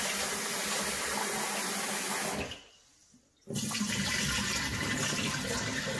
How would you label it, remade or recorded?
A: recorded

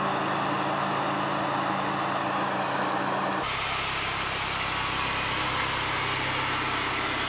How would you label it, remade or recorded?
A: recorded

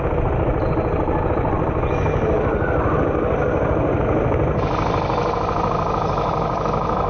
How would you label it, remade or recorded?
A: recorded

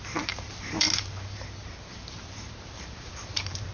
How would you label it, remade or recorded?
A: remade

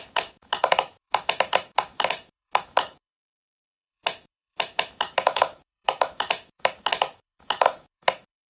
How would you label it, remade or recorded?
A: remade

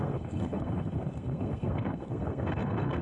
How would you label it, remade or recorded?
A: remade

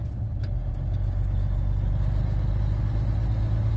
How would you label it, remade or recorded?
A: recorded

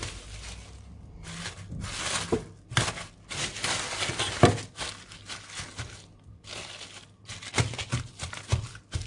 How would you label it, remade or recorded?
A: recorded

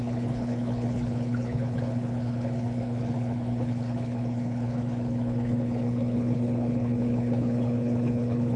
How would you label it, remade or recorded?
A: remade